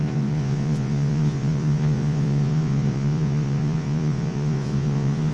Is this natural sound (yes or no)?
no